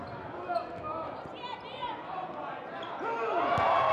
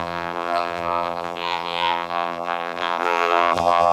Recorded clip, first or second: first